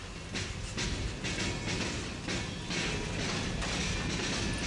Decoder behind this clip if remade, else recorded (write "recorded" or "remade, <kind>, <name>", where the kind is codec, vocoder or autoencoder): recorded